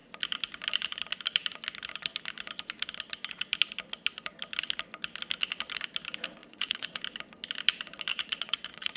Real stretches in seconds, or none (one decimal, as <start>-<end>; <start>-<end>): 0.0-6.4; 7.0-8.1